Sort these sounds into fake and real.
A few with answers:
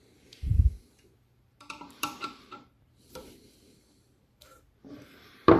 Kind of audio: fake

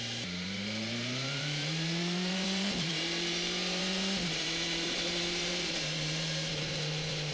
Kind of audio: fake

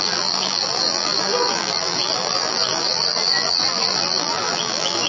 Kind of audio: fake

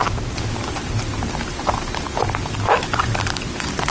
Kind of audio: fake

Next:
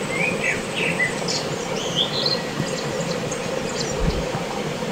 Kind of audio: real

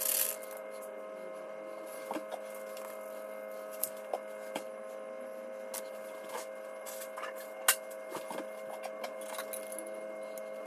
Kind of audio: real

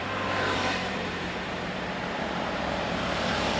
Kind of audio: fake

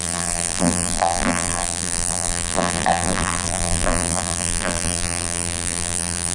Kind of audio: fake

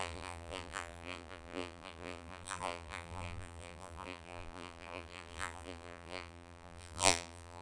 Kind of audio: fake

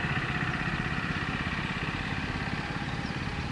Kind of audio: fake